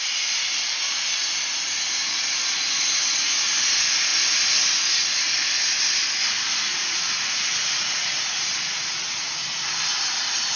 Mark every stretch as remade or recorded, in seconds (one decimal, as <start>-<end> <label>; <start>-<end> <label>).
0.0-6.8 recorded; 6.8-9.3 remade; 9.3-10.6 recorded